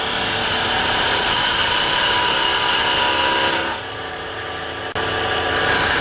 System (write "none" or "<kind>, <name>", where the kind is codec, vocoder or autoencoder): none